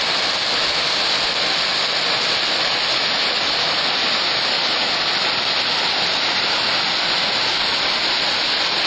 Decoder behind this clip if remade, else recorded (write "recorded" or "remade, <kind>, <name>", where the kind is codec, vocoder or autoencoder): recorded